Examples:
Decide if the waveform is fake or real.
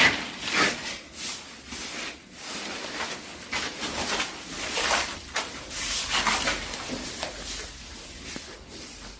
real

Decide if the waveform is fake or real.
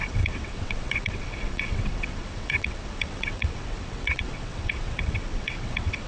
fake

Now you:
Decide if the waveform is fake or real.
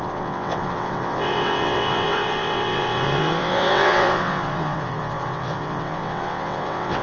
fake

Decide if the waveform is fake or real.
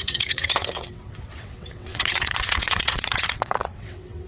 fake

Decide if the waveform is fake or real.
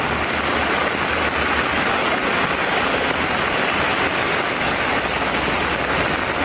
real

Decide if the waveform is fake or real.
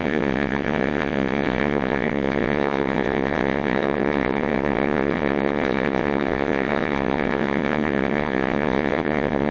fake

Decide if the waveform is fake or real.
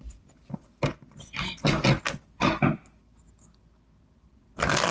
real